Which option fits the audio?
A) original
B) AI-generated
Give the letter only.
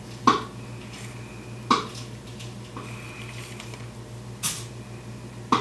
A